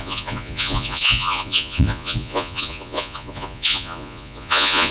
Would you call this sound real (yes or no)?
no